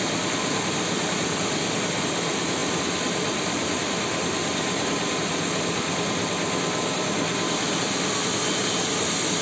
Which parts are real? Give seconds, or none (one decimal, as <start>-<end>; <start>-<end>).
0.0-9.4